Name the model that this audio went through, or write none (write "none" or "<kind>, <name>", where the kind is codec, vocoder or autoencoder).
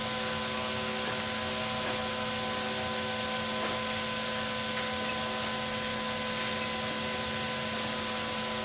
none